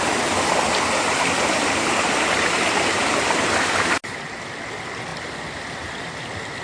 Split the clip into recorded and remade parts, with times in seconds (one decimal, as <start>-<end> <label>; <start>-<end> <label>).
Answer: 0.0-6.6 recorded